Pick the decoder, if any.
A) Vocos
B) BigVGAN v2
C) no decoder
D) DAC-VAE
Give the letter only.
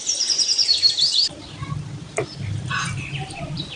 B